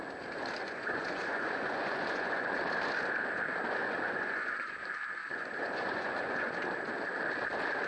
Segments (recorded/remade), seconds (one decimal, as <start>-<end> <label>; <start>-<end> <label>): 0.0-0.6 recorded; 0.6-2.6 remade; 2.6-3.8 recorded; 3.8-4.7 remade; 4.7-5.2 recorded; 5.2-6.5 remade; 6.5-7.9 recorded